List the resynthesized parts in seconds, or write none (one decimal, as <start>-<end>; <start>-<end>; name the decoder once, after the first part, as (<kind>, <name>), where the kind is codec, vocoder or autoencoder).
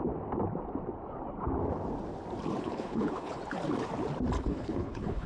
2.6-3.4 (codec, HILCodec); 4.4-5.3